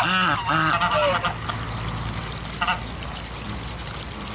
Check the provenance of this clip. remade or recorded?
recorded